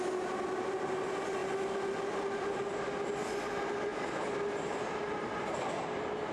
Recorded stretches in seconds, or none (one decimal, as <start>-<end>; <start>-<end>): 0.0-3.9; 5.6-6.3